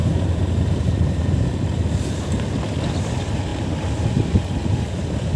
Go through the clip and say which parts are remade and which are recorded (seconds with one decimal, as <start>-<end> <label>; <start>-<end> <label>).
0.0-1.5 remade; 1.5-5.4 recorded